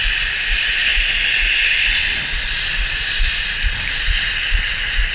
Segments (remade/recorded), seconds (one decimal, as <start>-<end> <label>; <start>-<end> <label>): 0.0-5.1 recorded